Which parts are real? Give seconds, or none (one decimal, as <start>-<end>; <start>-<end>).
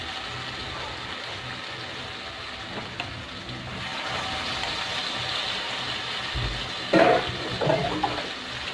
0.0-8.7